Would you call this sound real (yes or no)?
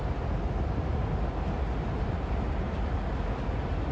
yes